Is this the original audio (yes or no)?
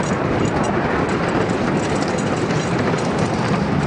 yes